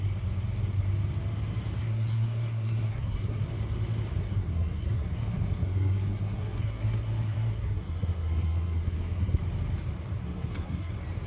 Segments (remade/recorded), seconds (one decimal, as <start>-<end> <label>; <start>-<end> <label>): 0.0-1.8 recorded; 1.8-3.4 remade; 3.4-4.2 recorded; 4.2-9.4 remade; 9.4-10.2 recorded; 10.2-10.9 remade; 10.9-11.3 recorded